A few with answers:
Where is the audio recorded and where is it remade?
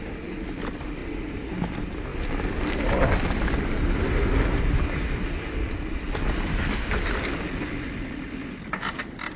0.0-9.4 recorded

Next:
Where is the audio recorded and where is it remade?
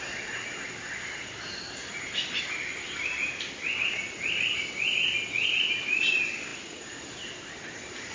0.0-6.5 recorded; 6.5-7.0 remade; 7.0-8.1 recorded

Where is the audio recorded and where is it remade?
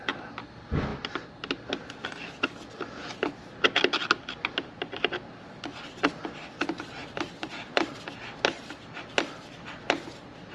0.0-7.0 recorded; 7.0-8.0 remade; 8.0-10.5 recorded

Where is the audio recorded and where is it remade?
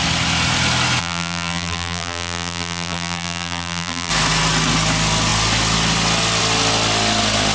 0.0-1.0 recorded; 1.0-4.1 remade; 4.1-7.5 recorded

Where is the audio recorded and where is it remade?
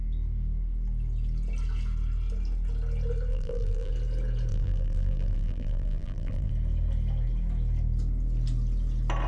0.0-3.3 recorded; 3.3-3.9 remade; 3.9-4.5 recorded; 4.5-6.5 remade; 6.5-9.3 recorded